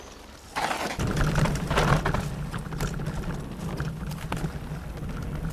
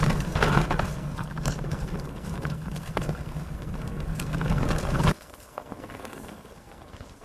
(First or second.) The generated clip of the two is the second